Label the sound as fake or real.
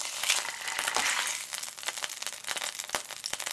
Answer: real